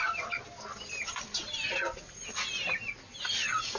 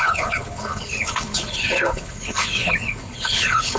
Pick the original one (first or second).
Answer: first